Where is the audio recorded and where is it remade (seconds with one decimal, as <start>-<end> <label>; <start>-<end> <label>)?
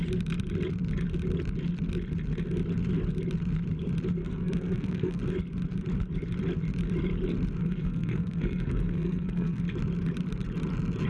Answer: 0.0-4.2 recorded; 4.2-5.2 remade; 5.2-7.6 recorded; 7.6-9.6 remade; 9.6-11.1 recorded